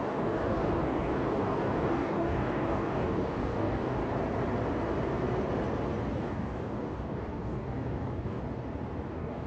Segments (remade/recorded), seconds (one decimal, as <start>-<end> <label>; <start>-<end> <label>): 0.0-4.0 remade; 4.0-6.2 recorded; 6.2-8.4 remade; 8.4-9.1 recorded; 9.1-9.5 remade